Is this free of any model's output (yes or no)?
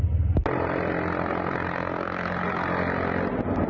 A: yes